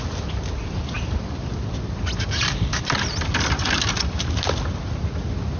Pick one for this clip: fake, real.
real